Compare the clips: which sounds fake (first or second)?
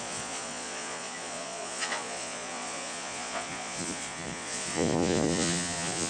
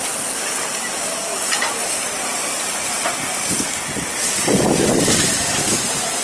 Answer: first